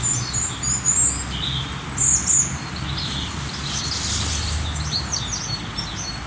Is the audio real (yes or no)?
yes